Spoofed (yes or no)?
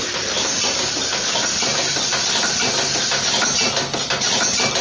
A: no